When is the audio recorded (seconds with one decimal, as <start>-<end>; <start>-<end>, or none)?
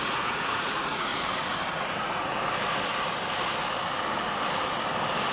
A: 1.1-1.9; 2.3-5.3